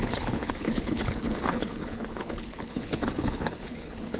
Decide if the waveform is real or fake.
fake